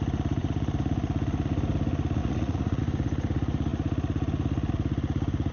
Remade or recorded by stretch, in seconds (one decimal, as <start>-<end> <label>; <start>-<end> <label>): 0.0-2.2 recorded; 2.2-2.8 remade; 2.8-5.5 recorded